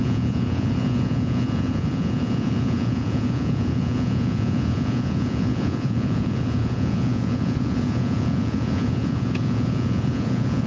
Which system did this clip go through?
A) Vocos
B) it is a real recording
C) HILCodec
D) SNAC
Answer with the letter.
A